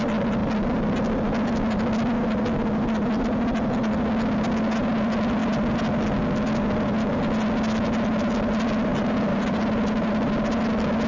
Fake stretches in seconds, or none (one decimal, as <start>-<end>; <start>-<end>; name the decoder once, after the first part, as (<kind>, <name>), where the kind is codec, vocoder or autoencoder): 0.4-0.9 (vocoder, BigVGAN v2); 8.9-10.3

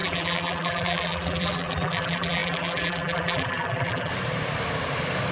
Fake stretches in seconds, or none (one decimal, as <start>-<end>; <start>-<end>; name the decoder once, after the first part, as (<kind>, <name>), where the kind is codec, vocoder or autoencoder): 0.0-4.1 (vocoder, BigVGAN v2)

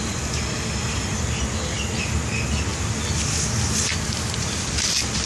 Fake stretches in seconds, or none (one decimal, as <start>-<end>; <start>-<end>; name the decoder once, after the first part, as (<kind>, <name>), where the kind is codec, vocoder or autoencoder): none

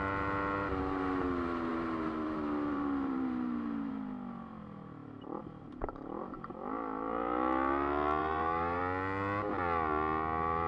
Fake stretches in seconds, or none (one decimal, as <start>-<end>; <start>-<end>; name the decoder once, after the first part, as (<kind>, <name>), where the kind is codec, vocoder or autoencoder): 1.7-3.9 (vocoder, BigVGAN v2); 8.2-8.8